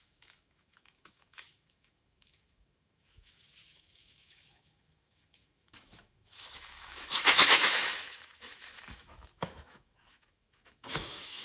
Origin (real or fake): fake